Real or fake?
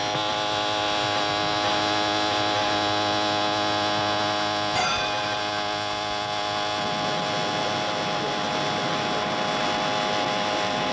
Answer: real